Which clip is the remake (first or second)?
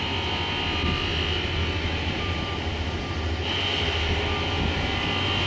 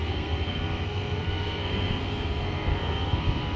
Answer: second